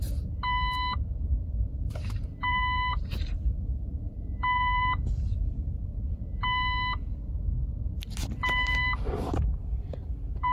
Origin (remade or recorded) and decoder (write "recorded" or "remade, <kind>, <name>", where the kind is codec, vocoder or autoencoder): remade, vocoder, BigVGAN v2